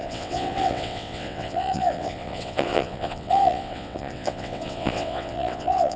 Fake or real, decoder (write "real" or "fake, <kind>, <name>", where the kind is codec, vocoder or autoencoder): fake, vocoder, WaveNeXt